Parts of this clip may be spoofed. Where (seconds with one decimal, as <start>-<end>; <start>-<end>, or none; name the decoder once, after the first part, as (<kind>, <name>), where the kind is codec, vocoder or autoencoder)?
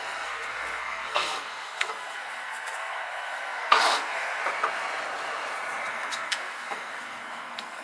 0.0-4.4 (codec, SNAC); 5.9-7.8